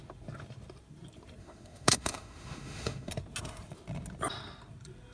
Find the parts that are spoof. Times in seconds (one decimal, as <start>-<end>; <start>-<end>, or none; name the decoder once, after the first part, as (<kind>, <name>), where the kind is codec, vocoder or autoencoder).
1.4-3.1 (autoencoder, DAC-VAE)